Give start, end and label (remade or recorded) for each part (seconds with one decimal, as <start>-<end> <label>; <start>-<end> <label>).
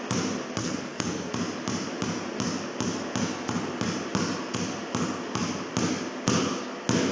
0.0-0.6 recorded; 0.6-1.3 remade; 1.3-7.1 recorded